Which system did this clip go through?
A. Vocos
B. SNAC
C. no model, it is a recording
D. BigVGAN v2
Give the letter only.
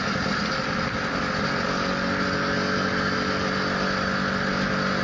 C